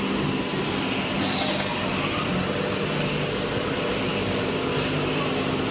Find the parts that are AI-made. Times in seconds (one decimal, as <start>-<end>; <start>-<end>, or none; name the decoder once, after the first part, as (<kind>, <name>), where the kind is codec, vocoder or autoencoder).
4.1-4.7 (codec, DAC)